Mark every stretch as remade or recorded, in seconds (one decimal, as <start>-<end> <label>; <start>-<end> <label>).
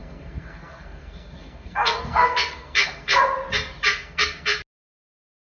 0.0-3.2 remade; 3.2-3.9 recorded; 3.9-4.6 remade; 4.6-5.4 recorded